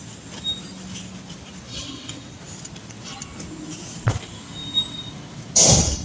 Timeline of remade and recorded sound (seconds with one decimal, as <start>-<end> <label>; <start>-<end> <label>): 0.0-1.7 recorded; 1.7-2.4 remade; 2.4-6.0 recorded